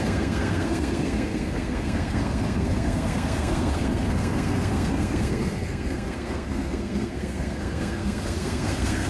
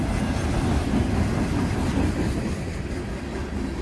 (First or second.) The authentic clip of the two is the second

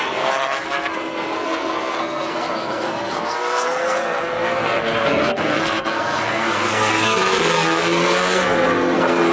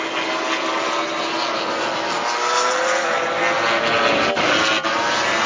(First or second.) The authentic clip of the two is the second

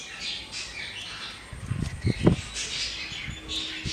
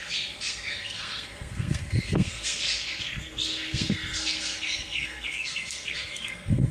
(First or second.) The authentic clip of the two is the first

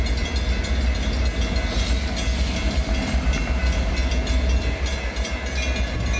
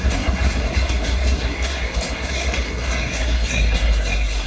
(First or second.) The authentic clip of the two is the first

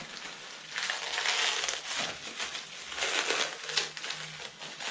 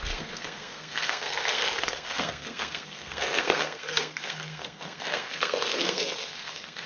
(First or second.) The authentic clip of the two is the first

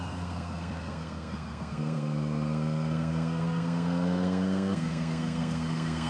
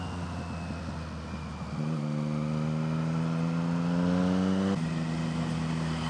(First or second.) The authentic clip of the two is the second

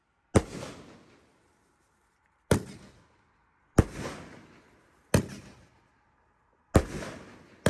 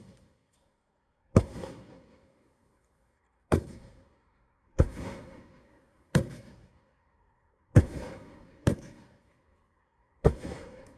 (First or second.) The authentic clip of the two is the first